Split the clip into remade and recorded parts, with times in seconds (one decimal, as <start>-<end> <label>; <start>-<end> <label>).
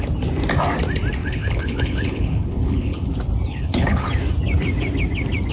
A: 0.0-1.2 recorded; 1.2-3.1 remade; 3.1-3.5 recorded; 3.5-4.1 remade; 4.1-5.5 recorded